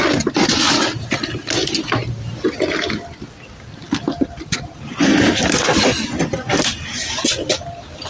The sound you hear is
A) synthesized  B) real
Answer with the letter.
B